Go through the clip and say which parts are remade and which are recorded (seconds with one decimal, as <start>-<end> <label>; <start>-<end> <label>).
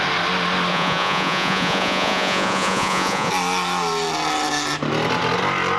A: 0.0-0.7 recorded; 0.7-3.3 remade; 3.3-5.8 recorded